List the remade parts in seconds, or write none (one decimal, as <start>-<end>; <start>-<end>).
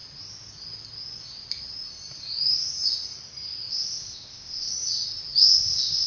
3.7-4.7; 5.4-6.1